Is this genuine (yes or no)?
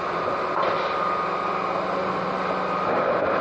yes